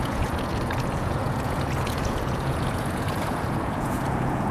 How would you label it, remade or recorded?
remade